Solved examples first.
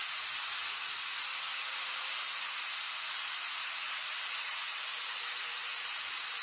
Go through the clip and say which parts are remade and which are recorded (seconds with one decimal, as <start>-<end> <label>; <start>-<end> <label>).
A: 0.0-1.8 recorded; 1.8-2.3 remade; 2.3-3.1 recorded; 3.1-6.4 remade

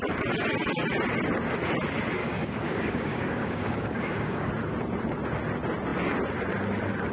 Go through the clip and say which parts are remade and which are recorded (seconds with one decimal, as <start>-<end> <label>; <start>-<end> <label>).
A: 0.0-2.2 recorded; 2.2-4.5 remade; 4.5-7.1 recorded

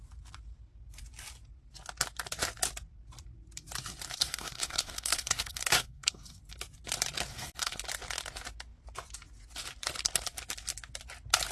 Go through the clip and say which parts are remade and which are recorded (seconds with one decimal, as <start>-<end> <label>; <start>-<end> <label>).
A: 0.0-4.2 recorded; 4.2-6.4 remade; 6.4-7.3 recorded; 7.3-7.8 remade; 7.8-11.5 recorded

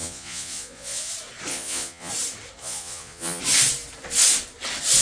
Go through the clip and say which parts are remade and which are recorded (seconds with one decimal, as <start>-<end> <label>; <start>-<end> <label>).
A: 0.0-1.1 remade; 1.1-1.5 recorded; 1.5-2.1 remade; 2.1-2.6 recorded; 2.6-3.4 remade; 3.4-5.0 recorded

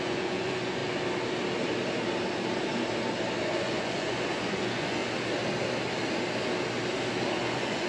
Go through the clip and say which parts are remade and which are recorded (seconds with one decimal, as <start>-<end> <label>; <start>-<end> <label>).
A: 0.0-0.8 remade; 0.8-3.4 recorded; 3.4-5.0 remade; 5.0-7.4 recorded; 7.4-7.9 remade

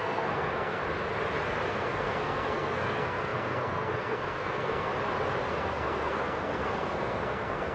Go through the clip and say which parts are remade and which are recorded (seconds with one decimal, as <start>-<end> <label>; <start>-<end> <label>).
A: 0.0-0.8 remade; 0.8-1.7 recorded; 1.7-4.9 remade; 4.9-5.5 recorded; 5.5-7.7 remade